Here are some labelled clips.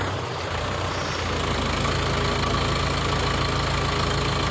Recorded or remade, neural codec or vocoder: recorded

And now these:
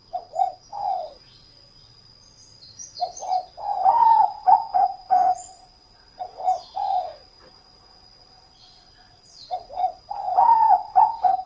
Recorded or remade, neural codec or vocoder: remade, vocoder, Vocos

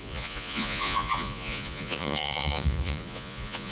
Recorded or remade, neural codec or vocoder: remade, vocoder, Vocos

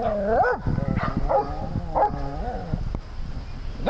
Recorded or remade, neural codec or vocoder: recorded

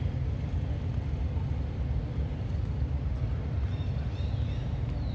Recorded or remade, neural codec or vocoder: recorded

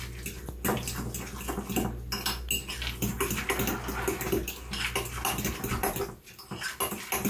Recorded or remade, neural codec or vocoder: recorded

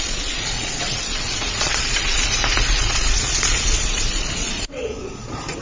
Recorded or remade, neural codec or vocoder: remade, vocoder, Vocos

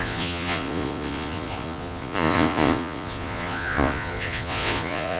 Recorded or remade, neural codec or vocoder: remade, vocoder, Vocos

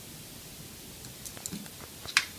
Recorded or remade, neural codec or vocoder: recorded